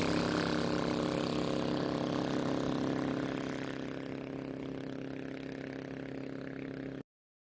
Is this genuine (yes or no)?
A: yes